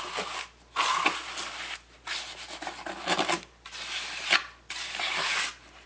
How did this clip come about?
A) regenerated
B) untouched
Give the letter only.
B